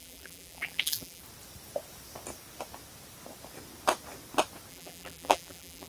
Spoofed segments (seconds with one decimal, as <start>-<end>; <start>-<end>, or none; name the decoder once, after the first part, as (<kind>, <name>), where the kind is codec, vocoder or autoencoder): 0.0-1.2 (vocoder, BigVGAN v2); 4.7-5.9